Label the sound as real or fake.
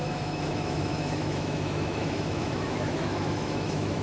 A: fake